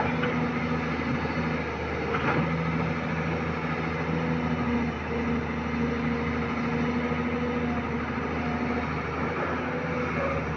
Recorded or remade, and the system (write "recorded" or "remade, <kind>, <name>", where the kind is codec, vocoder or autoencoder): recorded